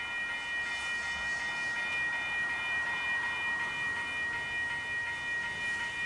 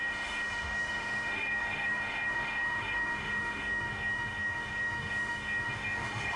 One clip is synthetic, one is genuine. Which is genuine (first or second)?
first